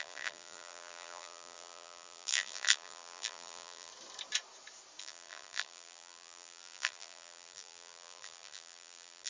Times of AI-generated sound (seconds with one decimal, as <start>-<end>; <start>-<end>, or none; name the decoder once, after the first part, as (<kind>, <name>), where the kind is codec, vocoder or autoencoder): 0.0-3.9 (vocoder, BigVGAN v2); 5.0-9.3